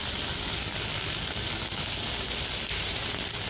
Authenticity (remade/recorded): recorded